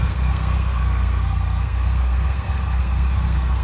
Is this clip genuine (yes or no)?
no